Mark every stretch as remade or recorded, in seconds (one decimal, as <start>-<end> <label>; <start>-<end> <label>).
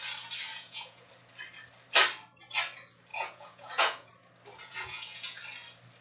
0.0-0.5 recorded; 0.5-1.1 remade; 1.1-3.1 recorded; 3.1-4.1 remade; 4.1-4.6 recorded; 4.6-5.4 remade; 5.4-6.0 recorded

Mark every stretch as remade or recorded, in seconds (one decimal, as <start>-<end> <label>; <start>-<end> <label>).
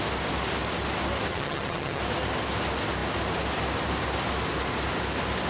0.0-1.3 recorded; 1.3-2.0 remade; 2.0-5.5 recorded